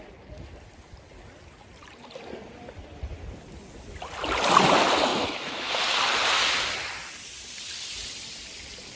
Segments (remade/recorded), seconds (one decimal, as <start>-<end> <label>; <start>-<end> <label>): 0.0-5.1 recorded; 5.1-5.7 remade; 5.7-9.0 recorded